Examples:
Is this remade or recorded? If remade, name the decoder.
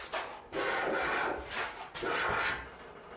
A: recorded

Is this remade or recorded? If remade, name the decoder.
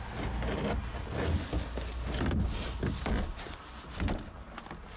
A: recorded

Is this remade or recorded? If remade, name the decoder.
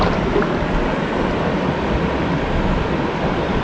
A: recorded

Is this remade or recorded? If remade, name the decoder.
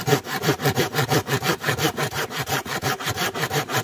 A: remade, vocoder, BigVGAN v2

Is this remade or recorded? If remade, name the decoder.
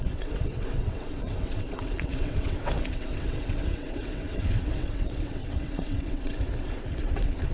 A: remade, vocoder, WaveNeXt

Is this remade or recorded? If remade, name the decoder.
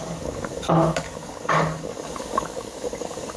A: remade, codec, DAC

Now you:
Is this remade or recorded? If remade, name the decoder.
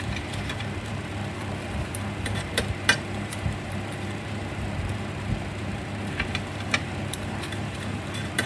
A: remade, vocoder, BigVGAN v2